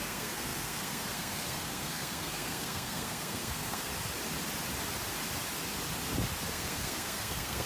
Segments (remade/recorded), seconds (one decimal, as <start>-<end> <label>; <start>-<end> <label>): 0.0-3.9 remade; 3.9-6.5 recorded; 6.5-7.7 remade